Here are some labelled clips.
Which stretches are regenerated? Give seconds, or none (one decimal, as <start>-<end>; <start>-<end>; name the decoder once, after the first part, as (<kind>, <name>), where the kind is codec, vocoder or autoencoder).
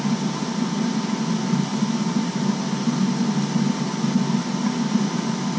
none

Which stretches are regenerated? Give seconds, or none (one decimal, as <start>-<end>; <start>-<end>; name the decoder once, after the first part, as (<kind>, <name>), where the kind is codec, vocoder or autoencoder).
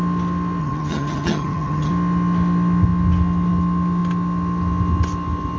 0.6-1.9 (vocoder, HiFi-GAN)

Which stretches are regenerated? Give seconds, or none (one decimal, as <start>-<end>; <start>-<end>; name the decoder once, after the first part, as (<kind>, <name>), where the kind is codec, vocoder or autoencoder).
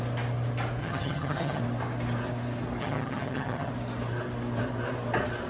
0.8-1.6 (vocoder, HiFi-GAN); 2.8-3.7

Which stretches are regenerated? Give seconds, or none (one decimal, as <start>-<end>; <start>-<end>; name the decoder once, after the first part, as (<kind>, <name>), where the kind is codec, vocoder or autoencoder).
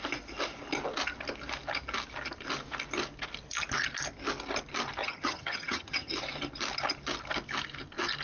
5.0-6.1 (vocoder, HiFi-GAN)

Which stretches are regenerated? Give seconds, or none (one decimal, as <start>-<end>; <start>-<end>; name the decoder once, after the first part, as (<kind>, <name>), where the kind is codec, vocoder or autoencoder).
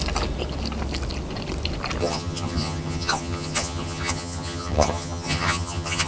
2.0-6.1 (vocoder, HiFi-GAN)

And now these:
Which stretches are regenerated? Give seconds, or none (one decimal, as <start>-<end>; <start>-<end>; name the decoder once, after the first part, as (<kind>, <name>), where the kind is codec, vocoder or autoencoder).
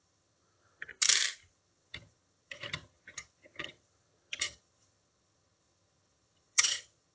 0.0-0.9 (vocoder, HiFi-GAN); 1.5-7.1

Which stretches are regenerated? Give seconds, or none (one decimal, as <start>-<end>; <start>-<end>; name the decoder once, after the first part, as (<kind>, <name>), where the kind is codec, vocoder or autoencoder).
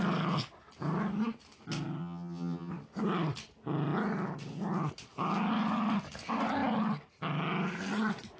2.0-2.7 (vocoder, HiFi-GAN)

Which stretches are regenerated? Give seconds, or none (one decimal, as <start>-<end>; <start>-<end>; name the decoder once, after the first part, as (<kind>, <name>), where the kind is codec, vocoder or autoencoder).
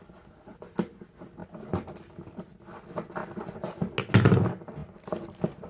none